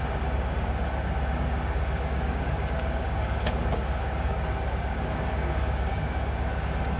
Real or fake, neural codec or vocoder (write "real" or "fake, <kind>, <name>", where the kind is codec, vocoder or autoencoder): fake, codec, DAC